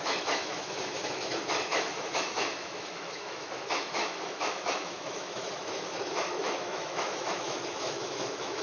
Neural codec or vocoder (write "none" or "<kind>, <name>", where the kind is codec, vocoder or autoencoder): autoencoder, DAC-VAE